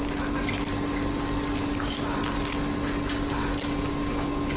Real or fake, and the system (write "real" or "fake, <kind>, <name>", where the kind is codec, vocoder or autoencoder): real